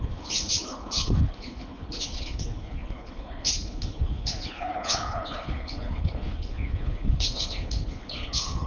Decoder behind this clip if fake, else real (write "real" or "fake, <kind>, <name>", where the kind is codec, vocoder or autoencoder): fake, codec, HILCodec